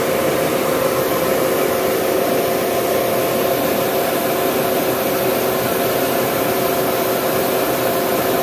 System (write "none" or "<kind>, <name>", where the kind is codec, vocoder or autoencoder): none